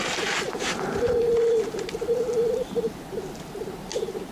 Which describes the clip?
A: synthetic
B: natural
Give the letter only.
B